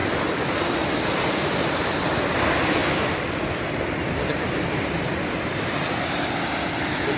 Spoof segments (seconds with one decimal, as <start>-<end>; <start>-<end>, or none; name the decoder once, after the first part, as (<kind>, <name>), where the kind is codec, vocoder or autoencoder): 0.0-0.9 (vocoder, BigVGAN v2)